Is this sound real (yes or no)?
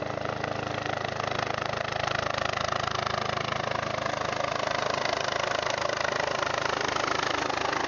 yes